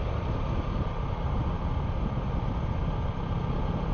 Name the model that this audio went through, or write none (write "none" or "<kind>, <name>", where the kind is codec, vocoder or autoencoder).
none